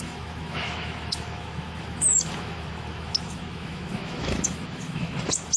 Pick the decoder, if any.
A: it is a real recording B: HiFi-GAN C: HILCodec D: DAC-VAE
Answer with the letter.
D